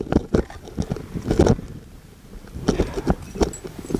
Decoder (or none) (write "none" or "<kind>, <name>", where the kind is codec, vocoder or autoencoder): none